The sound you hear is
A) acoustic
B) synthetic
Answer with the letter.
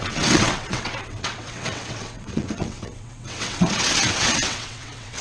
B